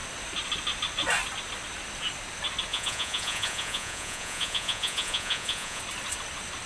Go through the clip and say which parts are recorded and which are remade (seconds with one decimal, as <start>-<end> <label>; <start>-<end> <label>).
0.0-2.7 recorded; 2.7-5.8 remade; 5.8-6.7 recorded